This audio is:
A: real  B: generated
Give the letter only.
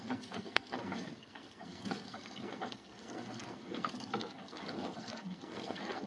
B